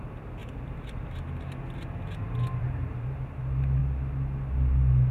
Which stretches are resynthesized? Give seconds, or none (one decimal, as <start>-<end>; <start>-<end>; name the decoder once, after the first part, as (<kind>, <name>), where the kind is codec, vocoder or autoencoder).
0.0-0.4 (vocoder, BigVGAN v2); 2.6-3.8